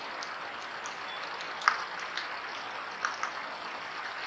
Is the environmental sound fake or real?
real